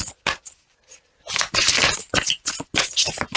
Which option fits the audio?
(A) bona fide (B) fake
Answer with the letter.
A